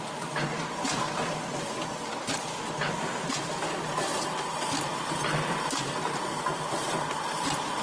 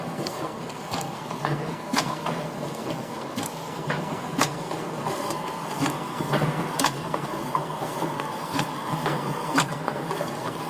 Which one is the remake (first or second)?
second